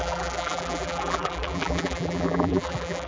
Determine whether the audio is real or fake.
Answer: fake